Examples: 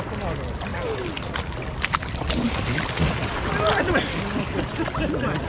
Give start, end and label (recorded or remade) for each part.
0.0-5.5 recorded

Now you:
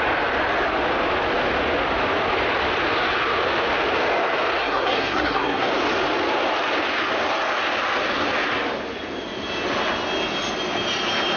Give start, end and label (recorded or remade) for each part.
0.0-4.6 recorded; 4.6-5.7 remade; 5.7-11.4 recorded

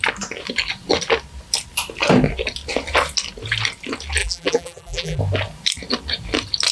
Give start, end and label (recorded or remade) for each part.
0.0-4.2 recorded; 4.2-5.2 remade; 5.2-6.7 recorded

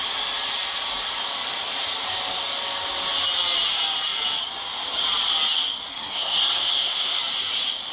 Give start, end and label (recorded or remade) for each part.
0.0-5.9 recorded; 5.9-7.2 remade; 7.2-7.9 recorded

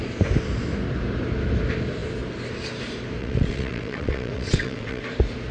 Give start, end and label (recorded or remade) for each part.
0.0-3.2 recorded; 3.2-5.0 remade; 5.0-5.5 recorded

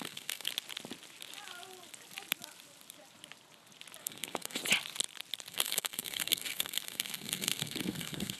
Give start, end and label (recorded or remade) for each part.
0.0-0.5 remade; 0.5-4.0 recorded; 4.0-4.6 remade; 4.6-5.5 recorded; 5.5-8.4 remade

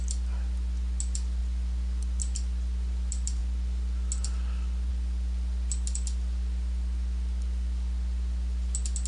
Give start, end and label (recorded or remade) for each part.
0.0-9.1 recorded